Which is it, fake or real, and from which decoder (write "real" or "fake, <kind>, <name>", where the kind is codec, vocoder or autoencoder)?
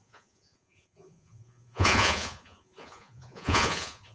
fake, vocoder, Vocos